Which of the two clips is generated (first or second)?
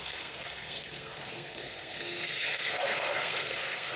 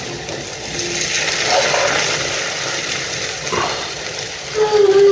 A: first